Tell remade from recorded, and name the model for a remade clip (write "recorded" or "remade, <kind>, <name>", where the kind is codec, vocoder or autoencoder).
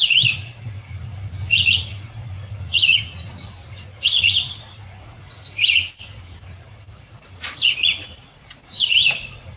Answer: remade, vocoder, Vocos